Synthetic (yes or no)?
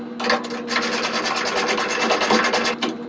no